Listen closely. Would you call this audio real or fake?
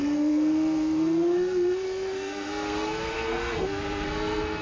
fake